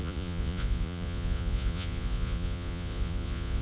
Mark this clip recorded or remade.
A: remade